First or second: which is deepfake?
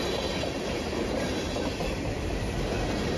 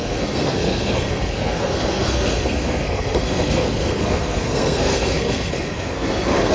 second